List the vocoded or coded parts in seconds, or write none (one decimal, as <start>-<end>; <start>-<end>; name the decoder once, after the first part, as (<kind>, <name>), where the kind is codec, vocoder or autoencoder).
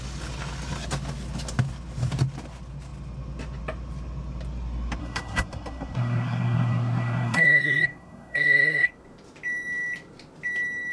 5.0-8.9 (codec, SNAC)